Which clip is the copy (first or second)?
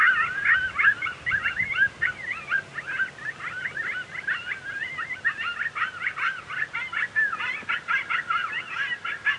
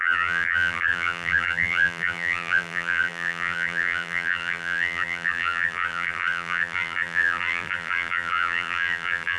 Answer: second